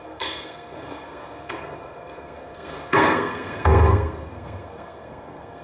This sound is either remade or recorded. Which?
remade